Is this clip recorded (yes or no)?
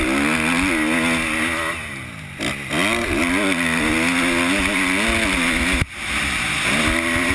yes